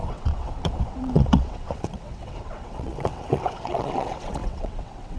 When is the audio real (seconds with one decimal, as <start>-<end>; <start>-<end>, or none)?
none